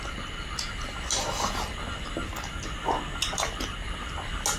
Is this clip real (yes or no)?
yes